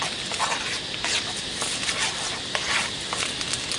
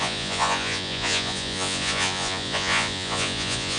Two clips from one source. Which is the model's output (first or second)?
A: second